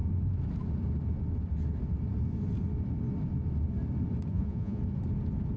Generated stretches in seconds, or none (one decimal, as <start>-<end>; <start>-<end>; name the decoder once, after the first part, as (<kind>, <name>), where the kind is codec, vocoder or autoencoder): 4.3-4.8 (vocoder, Vocos)

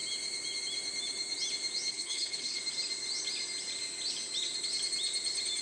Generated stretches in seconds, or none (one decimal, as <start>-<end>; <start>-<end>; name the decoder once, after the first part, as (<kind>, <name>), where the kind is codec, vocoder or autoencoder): 1.9-2.6 (codec, HILCodec)

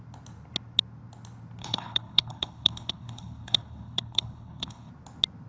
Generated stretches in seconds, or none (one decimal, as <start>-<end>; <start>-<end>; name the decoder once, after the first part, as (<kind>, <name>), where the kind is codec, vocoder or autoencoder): 1.6-4.9 (codec, HILCodec)

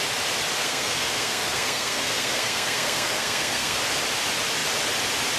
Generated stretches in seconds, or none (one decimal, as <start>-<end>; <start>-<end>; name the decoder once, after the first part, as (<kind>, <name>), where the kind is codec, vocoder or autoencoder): 0.6-3.8 (codec, SNAC)